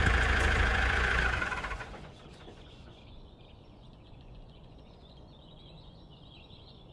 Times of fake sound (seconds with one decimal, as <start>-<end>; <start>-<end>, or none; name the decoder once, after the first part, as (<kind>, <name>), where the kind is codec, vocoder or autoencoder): 0.0-6.9 (vocoder, Vocos)